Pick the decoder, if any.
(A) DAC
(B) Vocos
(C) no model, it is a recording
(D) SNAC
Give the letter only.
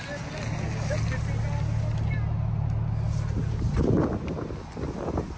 C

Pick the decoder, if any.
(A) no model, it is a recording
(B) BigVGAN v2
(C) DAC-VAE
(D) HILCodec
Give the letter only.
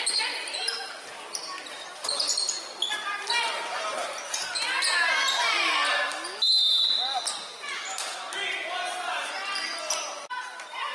A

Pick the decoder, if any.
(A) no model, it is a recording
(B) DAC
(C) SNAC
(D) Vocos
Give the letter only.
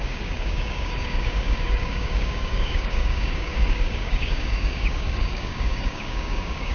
B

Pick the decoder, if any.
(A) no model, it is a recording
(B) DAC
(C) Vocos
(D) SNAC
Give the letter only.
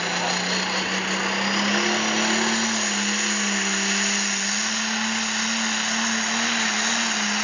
A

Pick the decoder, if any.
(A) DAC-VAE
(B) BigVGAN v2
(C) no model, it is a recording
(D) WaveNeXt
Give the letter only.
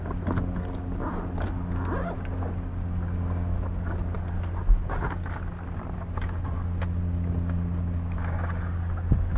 C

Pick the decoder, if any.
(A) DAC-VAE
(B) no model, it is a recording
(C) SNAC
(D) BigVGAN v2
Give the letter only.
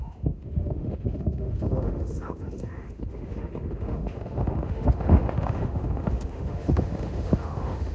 A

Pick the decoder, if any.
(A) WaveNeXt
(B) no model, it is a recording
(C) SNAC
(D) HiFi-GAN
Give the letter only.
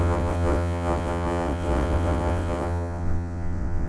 A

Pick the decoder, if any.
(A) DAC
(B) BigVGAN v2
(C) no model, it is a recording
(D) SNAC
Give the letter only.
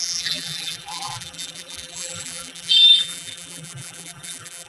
B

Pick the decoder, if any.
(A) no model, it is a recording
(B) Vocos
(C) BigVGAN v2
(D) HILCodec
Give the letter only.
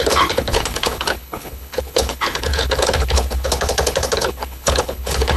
D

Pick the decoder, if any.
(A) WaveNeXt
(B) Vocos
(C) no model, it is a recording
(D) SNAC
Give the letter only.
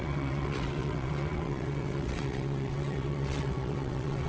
A